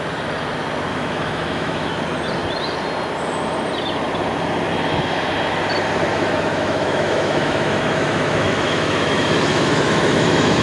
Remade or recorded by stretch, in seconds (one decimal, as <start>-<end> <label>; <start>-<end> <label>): 0.0-0.9 recorded; 0.9-2.0 remade; 2.0-6.1 recorded; 6.1-10.6 remade